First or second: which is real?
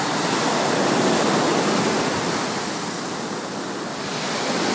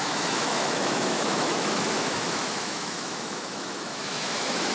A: first